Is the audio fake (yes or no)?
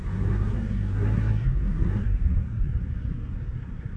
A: yes